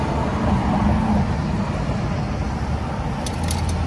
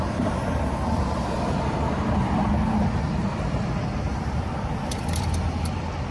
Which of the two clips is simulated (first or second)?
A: second